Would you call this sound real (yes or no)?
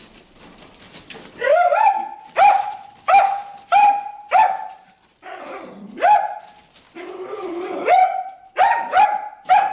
no